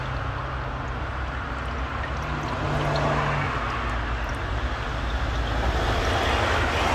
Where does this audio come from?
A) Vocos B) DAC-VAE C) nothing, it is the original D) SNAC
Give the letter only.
C